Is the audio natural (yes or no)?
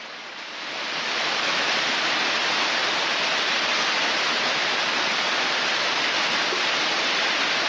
yes